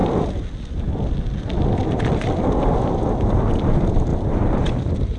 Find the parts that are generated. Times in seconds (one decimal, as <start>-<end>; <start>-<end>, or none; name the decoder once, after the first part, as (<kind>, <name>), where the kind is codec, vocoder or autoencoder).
4.1-5.2 (vocoder, BigVGAN v2)